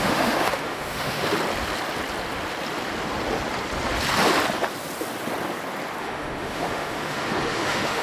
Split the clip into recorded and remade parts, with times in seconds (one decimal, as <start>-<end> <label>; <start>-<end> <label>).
0.0-1.2 remade; 1.2-6.0 recorded; 6.0-8.0 remade